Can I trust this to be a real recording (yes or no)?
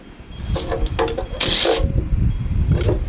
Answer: yes